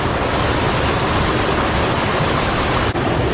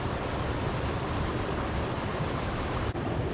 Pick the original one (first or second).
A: first